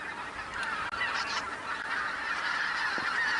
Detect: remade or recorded recorded